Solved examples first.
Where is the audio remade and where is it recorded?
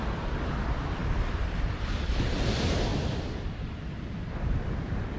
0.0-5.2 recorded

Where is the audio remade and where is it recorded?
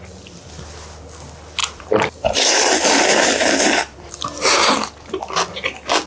0.0-1.6 recorded; 1.6-5.2 remade; 5.2-6.1 recorded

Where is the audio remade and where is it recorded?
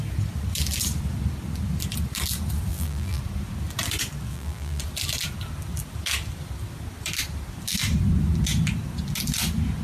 0.0-2.7 recorded; 2.7-3.2 remade; 3.2-4.3 recorded; 4.3-4.8 remade; 4.8-9.8 recorded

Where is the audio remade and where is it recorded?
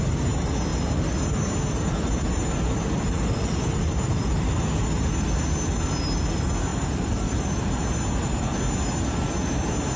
0.0-6.7 recorded; 6.7-7.4 remade; 7.4-10.0 recorded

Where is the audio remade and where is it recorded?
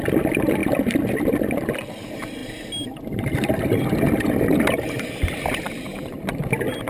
0.0-6.9 remade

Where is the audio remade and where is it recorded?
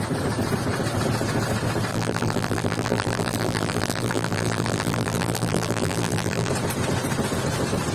0.0-1.9 recorded; 1.9-6.5 remade; 6.5-7.9 recorded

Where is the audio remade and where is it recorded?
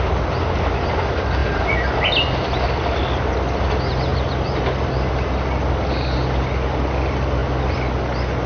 0.0-1.4 recorded; 1.4-2.1 remade; 2.1-4.1 recorded; 4.1-5.3 remade; 5.3-8.5 recorded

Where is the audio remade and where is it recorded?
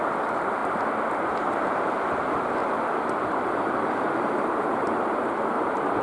0.0-0.6 remade; 0.6-1.3 recorded; 1.3-6.0 remade